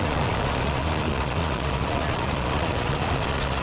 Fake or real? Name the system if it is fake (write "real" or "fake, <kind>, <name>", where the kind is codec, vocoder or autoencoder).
fake, vocoder, Vocos